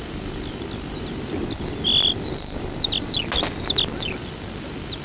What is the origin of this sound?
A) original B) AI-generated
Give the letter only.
A